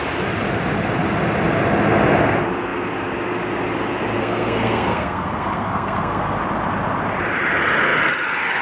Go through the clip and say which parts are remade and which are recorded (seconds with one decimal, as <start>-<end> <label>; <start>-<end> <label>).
0.0-4.2 recorded; 4.2-6.4 remade; 6.4-8.6 recorded